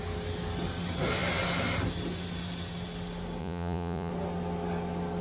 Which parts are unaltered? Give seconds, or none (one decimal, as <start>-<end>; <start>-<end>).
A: 0.0-3.4; 4.1-5.2